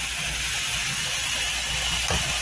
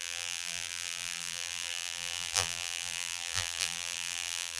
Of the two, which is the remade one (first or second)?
second